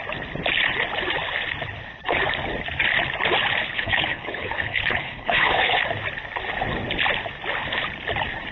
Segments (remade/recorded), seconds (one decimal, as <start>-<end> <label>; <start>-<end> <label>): 0.0-3.7 recorded; 3.7-5.8 remade; 5.8-8.5 recorded